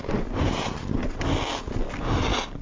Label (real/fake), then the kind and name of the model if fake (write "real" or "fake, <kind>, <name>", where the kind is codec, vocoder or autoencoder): real